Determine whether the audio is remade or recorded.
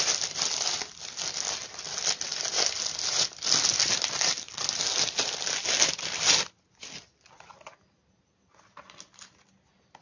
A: recorded